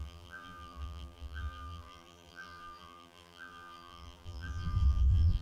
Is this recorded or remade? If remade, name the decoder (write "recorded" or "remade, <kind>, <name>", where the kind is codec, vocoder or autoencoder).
remade, vocoder, BigVGAN v2